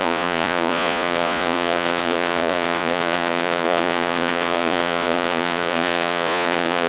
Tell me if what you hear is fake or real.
fake